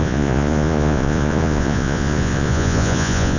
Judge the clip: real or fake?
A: fake